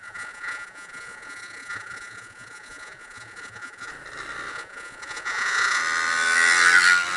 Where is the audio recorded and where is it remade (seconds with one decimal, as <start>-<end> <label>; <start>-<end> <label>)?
0.0-3.9 remade; 3.9-4.5 recorded; 4.5-5.8 remade; 5.8-7.2 recorded